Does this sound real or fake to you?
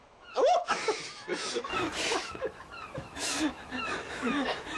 fake